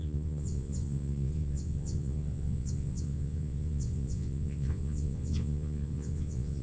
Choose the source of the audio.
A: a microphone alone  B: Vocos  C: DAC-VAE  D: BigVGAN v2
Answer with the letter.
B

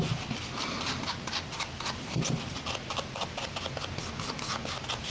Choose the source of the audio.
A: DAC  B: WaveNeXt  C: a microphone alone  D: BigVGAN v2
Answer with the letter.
C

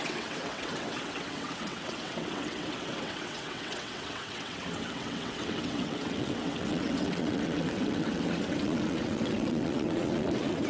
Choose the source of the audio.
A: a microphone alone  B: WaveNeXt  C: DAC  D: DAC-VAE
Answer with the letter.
B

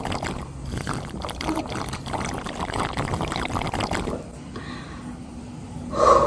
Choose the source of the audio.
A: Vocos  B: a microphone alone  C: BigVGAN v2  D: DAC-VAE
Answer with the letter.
C